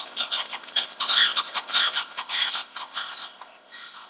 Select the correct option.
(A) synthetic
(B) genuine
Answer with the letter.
A